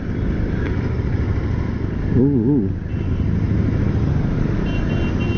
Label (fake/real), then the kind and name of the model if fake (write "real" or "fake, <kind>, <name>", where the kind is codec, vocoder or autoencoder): real